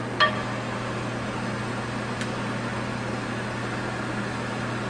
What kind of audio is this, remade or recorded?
recorded